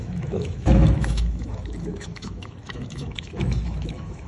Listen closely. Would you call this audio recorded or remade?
remade